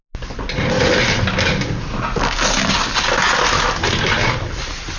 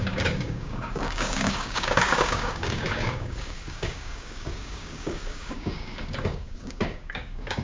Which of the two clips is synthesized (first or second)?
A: second